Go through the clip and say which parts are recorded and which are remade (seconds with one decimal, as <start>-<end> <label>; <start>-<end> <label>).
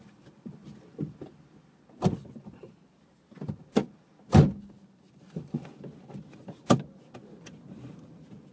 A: 0.0-3.8 remade; 3.8-7.4 recorded; 7.4-8.5 remade